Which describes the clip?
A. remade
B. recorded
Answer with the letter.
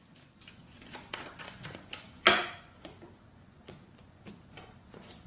A